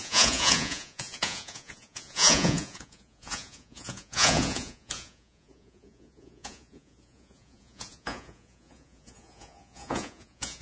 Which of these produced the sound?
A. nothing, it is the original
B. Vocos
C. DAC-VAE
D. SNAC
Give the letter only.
B